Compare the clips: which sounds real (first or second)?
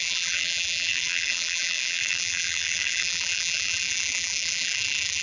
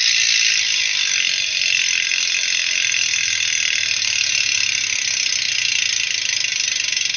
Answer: second